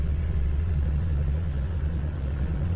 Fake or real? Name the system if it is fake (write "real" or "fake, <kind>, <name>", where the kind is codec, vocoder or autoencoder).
fake, vocoder, Vocos